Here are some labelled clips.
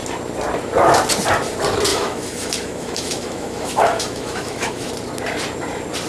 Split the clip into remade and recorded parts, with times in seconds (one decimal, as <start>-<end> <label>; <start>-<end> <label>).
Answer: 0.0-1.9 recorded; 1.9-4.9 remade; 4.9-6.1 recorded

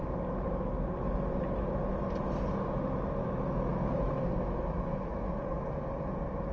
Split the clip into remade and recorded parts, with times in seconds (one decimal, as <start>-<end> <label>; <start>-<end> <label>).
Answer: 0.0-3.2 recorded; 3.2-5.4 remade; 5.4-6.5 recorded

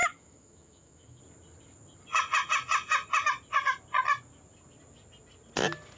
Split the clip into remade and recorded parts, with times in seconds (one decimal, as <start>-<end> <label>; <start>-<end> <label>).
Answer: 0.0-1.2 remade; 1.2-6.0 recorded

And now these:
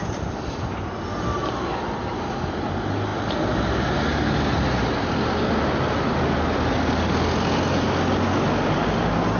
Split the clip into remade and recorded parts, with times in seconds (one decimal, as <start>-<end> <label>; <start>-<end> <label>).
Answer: 0.0-9.4 recorded

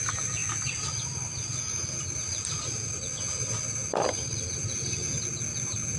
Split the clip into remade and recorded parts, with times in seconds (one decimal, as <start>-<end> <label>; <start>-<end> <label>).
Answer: 0.0-6.0 recorded

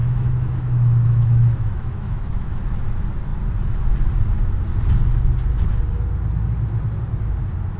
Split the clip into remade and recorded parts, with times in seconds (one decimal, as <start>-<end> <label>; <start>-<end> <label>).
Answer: 0.0-2.6 remade; 2.6-7.8 recorded

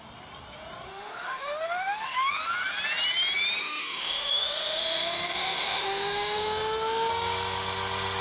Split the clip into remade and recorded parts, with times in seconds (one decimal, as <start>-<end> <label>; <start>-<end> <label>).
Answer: 0.0-0.9 recorded; 0.9-2.3 remade; 2.3-3.6 recorded; 3.6-7.1 remade; 7.1-8.2 recorded